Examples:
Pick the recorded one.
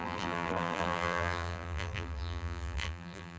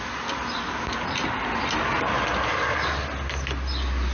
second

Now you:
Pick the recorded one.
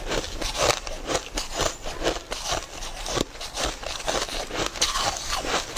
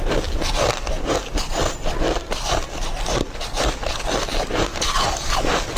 second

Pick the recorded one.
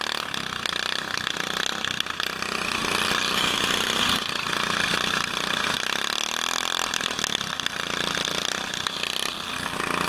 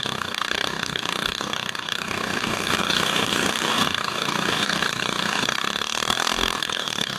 first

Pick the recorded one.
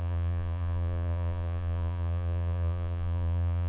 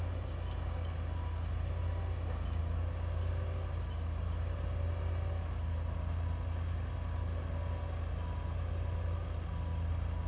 second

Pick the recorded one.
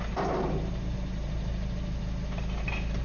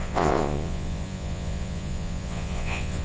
first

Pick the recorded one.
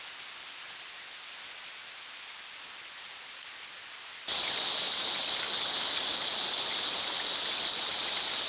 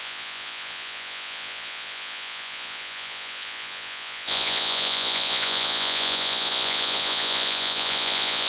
first